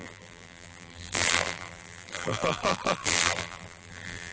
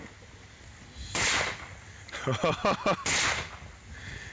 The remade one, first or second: first